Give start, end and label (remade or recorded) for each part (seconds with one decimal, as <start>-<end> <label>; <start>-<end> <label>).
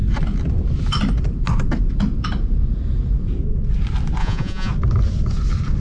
0.0-4.2 recorded; 4.2-4.7 remade; 4.7-5.8 recorded